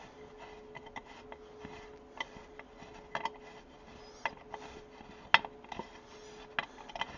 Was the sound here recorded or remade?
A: recorded